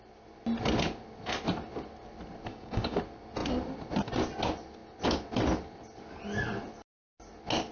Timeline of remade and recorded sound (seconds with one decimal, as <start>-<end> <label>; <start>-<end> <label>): 0.0-2.5 recorded; 2.5-3.0 remade; 3.0-7.7 recorded